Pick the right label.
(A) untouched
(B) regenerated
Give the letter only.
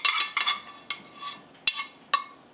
A